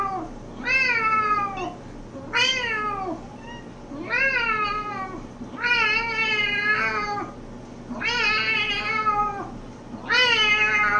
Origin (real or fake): real